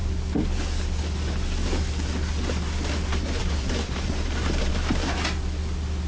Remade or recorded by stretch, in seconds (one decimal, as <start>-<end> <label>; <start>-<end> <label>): 0.0-3.4 recorded; 3.4-4.7 remade; 4.7-6.1 recorded